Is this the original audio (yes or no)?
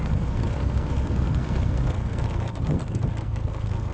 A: no